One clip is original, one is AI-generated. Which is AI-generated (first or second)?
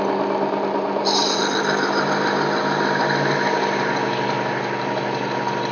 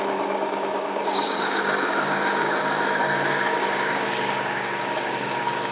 second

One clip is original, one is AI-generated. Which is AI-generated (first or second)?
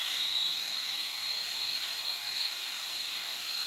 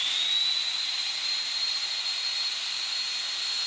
first